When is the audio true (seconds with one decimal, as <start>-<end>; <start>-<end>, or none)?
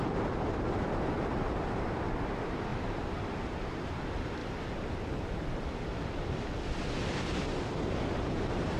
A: 4.4-7.2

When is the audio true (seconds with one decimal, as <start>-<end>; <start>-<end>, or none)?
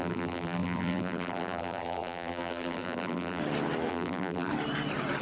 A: 3.4-3.9; 4.5-5.2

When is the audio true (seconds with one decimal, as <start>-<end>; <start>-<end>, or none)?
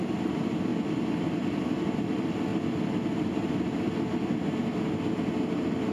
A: 0.7-2.0; 2.5-5.4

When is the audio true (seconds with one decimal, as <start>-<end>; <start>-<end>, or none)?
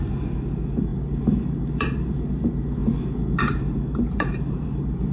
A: none